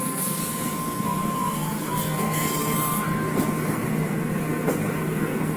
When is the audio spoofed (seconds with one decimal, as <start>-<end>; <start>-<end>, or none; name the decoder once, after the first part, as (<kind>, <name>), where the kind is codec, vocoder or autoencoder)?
0.0-5.6 (codec, SNAC)